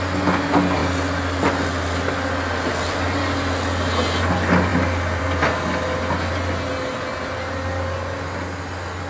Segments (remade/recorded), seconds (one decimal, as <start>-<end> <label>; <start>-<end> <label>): 0.0-9.1 recorded